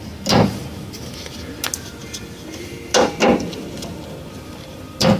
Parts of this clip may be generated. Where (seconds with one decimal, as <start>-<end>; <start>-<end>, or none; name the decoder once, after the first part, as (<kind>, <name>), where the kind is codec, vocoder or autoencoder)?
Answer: none